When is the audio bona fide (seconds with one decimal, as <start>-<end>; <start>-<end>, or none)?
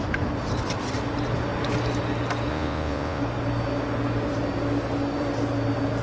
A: 0.0-2.5; 3.2-6.0